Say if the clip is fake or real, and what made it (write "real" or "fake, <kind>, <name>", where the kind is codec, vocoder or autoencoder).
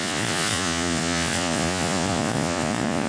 fake, vocoder, Vocos